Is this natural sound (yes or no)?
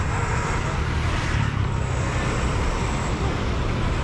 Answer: yes